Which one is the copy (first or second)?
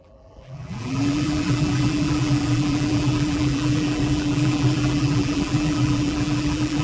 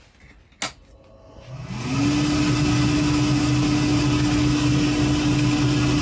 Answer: first